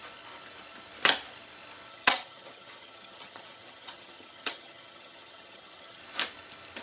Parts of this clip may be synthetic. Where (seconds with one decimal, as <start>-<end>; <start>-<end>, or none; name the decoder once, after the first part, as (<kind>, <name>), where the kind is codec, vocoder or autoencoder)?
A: 1.9-6.0 (vocoder, HiFi-GAN)